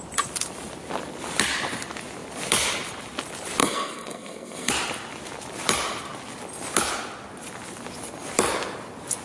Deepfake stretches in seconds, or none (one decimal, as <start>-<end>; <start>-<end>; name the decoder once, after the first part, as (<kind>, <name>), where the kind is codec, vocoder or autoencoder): 3.6-4.7 (codec, SNAC)